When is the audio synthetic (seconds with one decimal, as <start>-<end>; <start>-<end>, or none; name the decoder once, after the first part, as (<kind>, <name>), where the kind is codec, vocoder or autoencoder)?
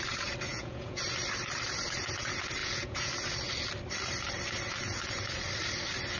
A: 0.5-1.0 (vocoder, Vocos); 2.6-3.1